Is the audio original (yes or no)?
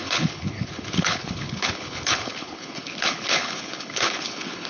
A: no